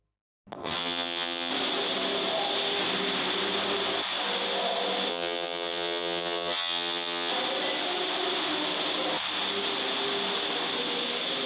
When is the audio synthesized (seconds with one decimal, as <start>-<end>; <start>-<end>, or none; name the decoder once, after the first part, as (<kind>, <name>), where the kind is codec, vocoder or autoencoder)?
0.6-1.5 (vocoder, HiFi-GAN); 5.1-7.3